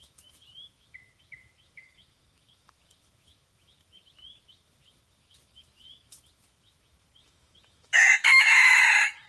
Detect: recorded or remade remade